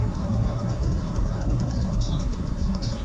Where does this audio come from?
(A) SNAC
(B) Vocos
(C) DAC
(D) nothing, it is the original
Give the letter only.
A